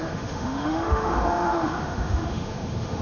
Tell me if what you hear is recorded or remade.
remade